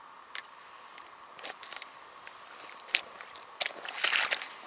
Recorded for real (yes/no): yes